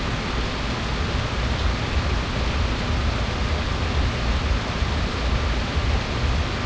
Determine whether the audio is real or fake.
real